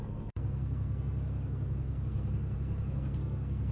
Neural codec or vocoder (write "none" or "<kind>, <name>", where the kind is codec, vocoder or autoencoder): codec, SNAC